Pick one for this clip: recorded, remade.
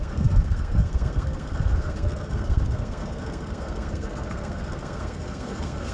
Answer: remade